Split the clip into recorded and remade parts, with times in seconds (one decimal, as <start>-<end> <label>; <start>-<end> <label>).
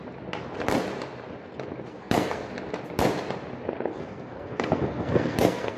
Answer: 0.0-1.9 recorded; 1.9-2.5 remade; 2.5-3.9 recorded; 3.9-5.8 remade